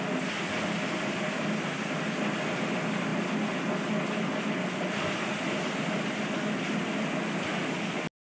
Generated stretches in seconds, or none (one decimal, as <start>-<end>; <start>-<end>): none